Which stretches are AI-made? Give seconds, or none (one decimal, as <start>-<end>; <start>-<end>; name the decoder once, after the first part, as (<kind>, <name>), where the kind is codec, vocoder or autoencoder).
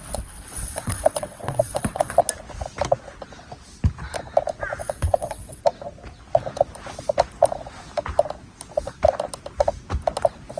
0.0-2.2 (vocoder, WaveNeXt); 4.8-5.6